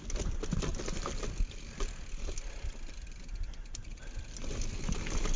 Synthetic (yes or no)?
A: no